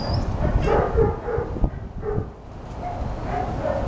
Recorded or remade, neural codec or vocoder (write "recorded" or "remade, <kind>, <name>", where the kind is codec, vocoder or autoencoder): recorded